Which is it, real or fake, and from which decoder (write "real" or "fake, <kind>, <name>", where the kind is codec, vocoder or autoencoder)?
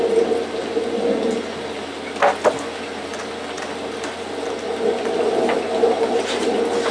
real